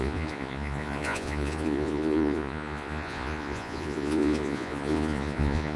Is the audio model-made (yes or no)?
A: yes